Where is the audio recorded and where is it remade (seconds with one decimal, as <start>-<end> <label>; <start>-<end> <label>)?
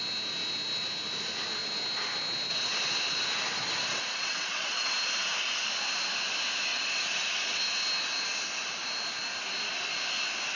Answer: 0.0-3.9 recorded; 3.9-5.0 remade; 5.0-6.7 recorded; 6.7-7.6 remade; 7.6-10.6 recorded